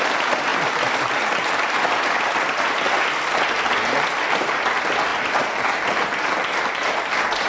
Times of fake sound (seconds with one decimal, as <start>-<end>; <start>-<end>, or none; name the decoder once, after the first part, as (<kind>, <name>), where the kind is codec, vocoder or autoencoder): none